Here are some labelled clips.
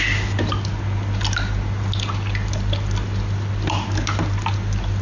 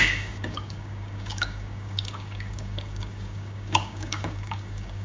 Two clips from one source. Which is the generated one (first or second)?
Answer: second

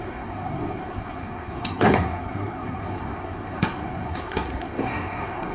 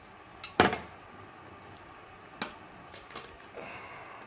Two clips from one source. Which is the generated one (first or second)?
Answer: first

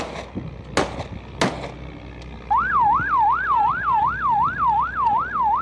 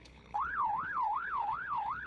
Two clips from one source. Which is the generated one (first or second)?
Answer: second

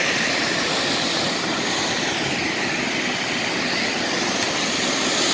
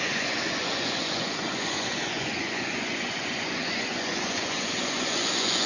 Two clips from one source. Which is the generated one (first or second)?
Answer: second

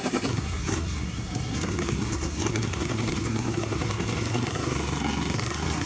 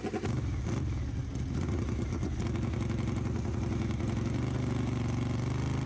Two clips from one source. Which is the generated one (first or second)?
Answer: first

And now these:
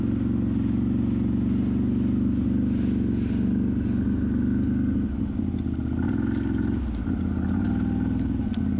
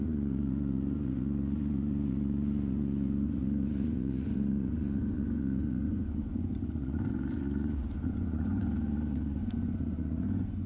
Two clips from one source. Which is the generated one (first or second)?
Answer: second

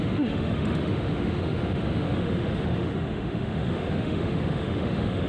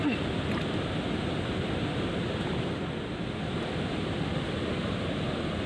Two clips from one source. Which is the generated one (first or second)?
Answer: first